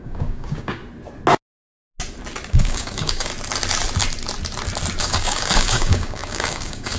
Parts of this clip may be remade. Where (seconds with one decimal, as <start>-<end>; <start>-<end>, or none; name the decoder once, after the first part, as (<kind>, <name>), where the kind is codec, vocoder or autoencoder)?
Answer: 0.0-0.8 (codec, DAC); 2.5-3.3; 5.0-7.0